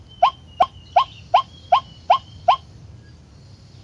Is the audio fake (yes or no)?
no